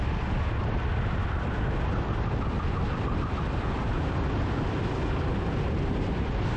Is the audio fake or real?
real